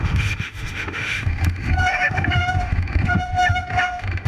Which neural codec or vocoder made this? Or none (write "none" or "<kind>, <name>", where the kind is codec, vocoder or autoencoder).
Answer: autoencoder, DAC-VAE